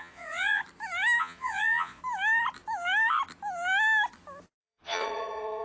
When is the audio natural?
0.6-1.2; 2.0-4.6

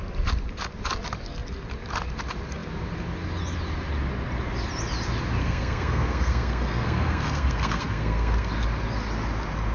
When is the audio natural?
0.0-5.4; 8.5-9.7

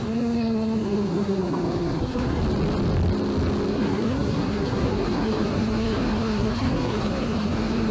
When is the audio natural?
2.4-3.7